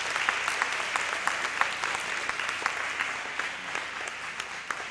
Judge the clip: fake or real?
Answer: real